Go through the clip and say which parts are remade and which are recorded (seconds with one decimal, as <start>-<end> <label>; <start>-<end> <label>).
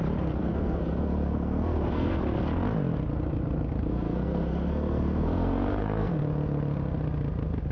0.0-0.4 recorded; 0.4-2.2 remade; 2.2-3.9 recorded; 3.9-6.2 remade; 6.2-7.7 recorded